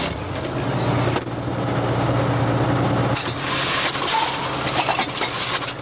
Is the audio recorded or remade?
recorded